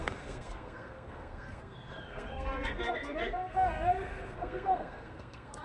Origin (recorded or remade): remade